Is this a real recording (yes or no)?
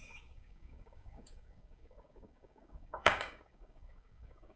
no